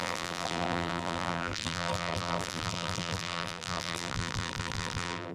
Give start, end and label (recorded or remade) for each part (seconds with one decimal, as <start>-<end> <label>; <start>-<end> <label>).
0.0-5.3 remade